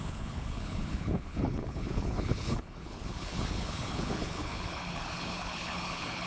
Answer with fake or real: fake